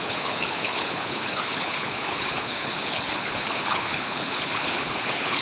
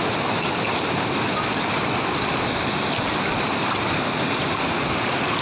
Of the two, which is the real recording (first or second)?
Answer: second